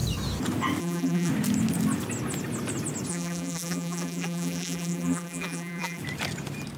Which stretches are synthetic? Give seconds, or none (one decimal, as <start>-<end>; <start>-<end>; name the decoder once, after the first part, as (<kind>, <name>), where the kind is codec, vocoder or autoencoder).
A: 0.8-1.3 (vocoder, BigVGAN v2); 3.1-6.0